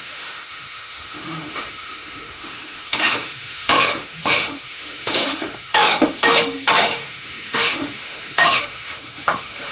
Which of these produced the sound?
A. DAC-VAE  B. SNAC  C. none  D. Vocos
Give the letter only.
A